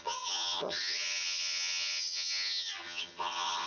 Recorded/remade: remade